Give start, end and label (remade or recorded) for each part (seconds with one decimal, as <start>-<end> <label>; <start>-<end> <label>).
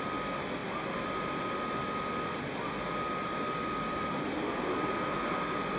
0.0-5.8 recorded